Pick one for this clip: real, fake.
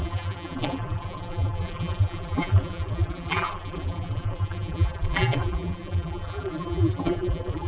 fake